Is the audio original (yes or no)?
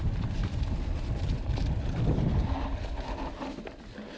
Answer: yes